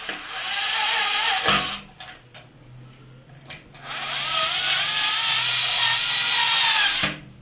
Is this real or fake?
real